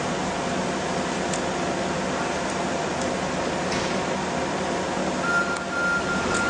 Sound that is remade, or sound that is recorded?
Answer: recorded